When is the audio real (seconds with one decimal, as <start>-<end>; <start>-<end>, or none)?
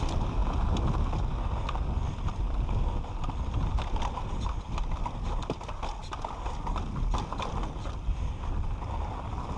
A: 0.0-9.6